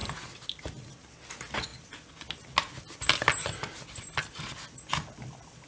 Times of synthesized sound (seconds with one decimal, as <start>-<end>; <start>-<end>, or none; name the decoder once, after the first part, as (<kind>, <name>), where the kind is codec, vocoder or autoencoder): 0.0-0.9 (vocoder, BigVGAN v2)